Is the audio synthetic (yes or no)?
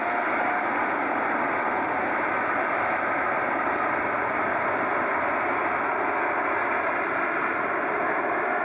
no